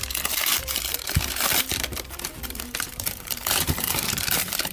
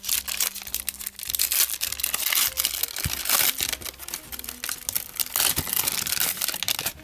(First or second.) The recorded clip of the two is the second